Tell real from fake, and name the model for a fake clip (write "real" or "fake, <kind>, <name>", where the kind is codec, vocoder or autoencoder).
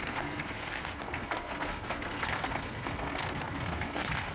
fake, codec, SNAC